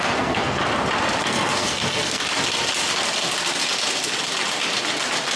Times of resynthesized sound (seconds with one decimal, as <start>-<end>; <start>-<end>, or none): 0.0-0.6; 1.2-2.2